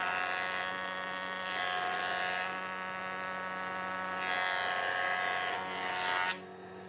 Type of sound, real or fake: real